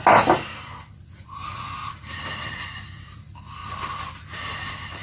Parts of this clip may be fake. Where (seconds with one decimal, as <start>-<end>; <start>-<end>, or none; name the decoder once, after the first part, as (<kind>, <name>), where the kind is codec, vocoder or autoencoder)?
1.8-2.8 (vocoder, BigVGAN v2); 3.6-5.0